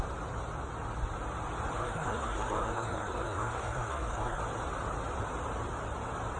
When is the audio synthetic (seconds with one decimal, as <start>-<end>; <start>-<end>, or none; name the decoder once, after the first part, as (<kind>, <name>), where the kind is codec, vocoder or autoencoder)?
1.8-4.4 (codec, SNAC)

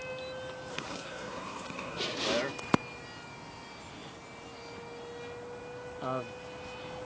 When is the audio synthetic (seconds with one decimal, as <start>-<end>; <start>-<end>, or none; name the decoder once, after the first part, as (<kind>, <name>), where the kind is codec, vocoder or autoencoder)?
0.7-2.0 (codec, SNAC)

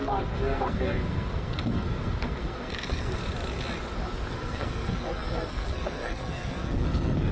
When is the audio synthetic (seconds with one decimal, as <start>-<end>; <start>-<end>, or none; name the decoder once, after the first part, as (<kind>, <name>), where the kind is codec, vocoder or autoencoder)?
0.0-3.2 (codec, SNAC); 4.3-7.3

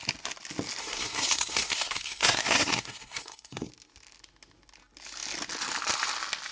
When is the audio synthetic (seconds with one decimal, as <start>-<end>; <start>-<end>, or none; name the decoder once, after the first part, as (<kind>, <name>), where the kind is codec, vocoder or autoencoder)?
0.8-3.7 (codec, SNAC)

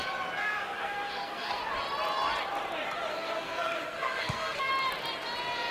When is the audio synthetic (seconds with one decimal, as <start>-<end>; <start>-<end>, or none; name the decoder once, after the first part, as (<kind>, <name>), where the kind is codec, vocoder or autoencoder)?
0.4-1.6 (codec, SNAC); 3.1-4.7

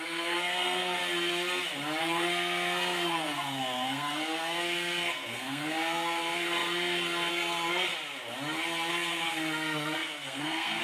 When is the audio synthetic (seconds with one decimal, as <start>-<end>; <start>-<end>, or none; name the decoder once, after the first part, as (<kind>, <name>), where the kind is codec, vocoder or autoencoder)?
0.0-1.0 (codec, SNAC); 2.0-7.9; 8.9-10.8

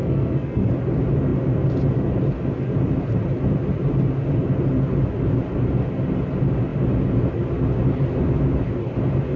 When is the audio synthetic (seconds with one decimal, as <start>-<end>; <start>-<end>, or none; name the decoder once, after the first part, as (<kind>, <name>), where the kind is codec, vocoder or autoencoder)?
0.0-0.7 (codec, SNAC)